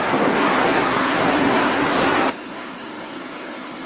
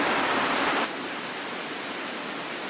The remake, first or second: first